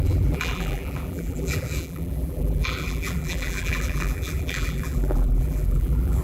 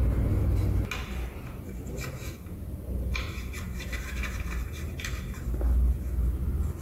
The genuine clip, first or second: second